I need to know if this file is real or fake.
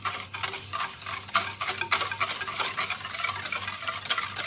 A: real